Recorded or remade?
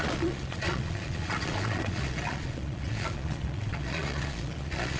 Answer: remade